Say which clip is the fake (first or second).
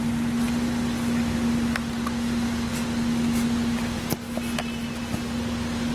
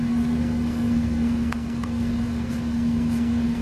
second